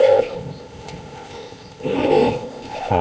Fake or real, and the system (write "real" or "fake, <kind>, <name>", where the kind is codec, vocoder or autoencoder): fake, codec, ZipCodec